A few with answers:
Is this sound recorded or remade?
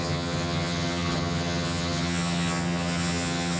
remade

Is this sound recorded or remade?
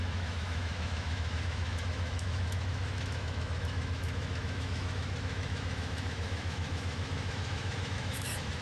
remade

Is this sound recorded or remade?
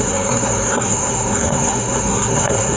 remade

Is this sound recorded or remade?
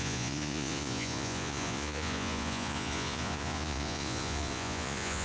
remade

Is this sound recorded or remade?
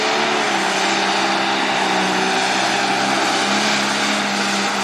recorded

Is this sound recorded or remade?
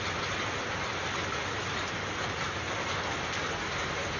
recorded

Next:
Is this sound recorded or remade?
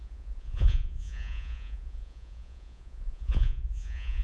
remade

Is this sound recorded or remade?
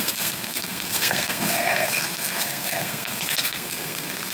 remade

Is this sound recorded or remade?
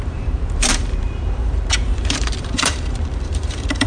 remade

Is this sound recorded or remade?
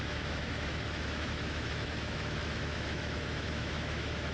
remade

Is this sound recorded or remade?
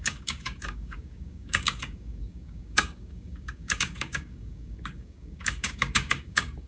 remade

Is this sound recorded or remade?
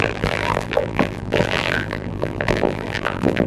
remade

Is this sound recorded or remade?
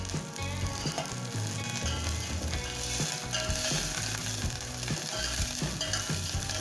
recorded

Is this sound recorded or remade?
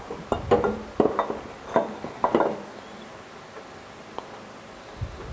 recorded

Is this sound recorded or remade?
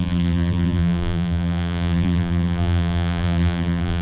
remade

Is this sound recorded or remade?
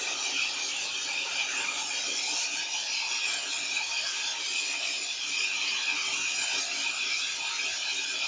recorded